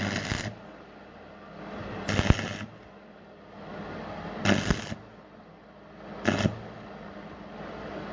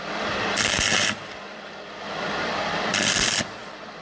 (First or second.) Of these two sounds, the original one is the first